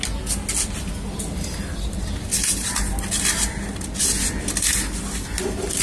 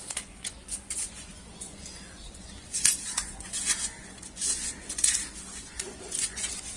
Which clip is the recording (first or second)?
first